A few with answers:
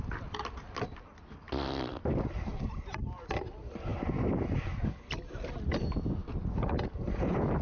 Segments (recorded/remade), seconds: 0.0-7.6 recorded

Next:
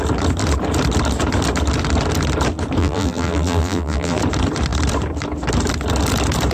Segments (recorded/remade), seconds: 0.0-2.8 recorded; 2.8-4.2 remade; 4.2-6.5 recorded